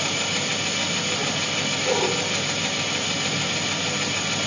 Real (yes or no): yes